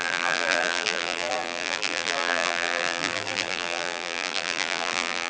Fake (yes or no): yes